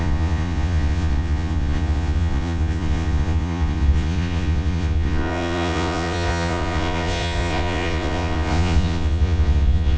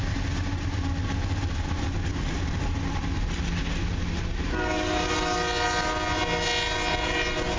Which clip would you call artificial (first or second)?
first